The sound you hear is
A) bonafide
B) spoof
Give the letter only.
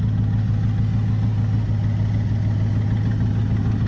A